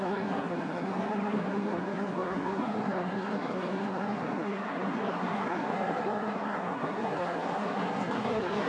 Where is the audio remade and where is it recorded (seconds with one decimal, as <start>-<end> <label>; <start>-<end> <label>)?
0.0-8.7 remade